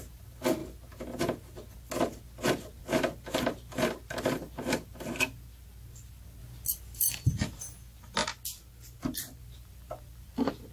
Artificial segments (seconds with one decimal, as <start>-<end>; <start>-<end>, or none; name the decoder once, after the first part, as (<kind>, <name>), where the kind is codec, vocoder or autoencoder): 0.0-0.6 (vocoder, BigVGAN v2); 4.3-6.4; 7.0-10.7

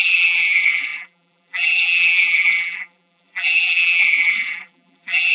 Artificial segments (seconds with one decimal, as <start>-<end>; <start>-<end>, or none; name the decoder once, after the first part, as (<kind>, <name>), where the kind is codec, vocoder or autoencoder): 0.0-5.3 (vocoder, BigVGAN v2)

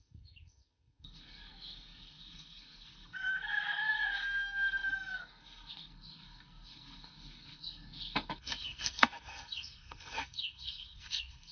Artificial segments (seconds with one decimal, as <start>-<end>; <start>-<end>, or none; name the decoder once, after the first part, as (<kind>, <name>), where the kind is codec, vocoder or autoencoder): 0.0-11.5 (codec, SNAC)